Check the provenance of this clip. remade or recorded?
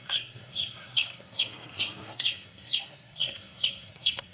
remade